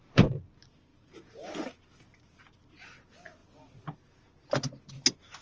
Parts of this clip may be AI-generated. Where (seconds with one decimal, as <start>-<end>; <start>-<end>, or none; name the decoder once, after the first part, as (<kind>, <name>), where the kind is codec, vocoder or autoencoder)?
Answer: none